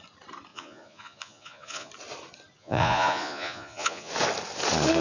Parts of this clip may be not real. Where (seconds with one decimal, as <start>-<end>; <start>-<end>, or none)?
0.5-1.9; 2.6-4.1